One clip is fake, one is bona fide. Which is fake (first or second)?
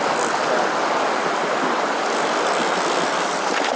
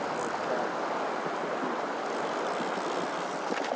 first